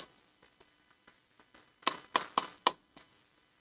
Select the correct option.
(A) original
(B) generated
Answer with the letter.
A